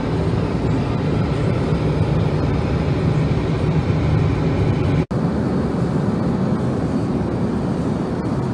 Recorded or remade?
recorded